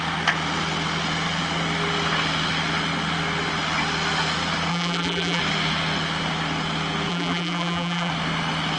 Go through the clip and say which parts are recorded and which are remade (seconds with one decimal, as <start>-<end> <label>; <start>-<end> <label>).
0.0-4.7 recorded; 4.7-5.4 remade; 5.4-7.1 recorded; 7.1-8.1 remade; 8.1-8.8 recorded